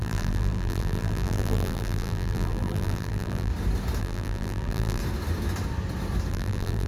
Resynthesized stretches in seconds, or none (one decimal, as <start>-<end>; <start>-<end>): 0.0-3.5; 4.0-5.0; 6.3-6.9